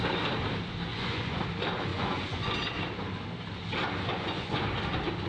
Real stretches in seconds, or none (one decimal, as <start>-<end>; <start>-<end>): 0.0-0.9; 1.4-1.9; 2.5-4.1; 4.6-5.3